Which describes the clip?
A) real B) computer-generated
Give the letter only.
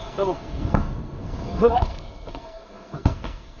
B